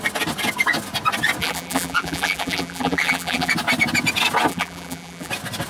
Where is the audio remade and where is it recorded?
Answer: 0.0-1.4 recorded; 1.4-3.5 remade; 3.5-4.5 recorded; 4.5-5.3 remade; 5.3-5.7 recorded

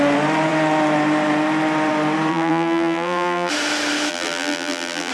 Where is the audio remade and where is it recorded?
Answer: 0.0-2.3 recorded; 2.3-3.5 remade; 3.5-4.1 recorded; 4.1-5.1 remade

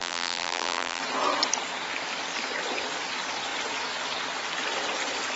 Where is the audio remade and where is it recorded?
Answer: 0.0-1.0 remade; 1.0-5.4 recorded

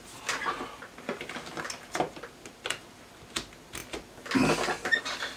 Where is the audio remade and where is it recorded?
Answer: 0.0-5.4 recorded